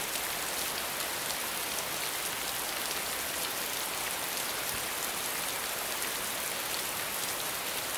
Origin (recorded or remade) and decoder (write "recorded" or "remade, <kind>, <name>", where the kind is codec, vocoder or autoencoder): recorded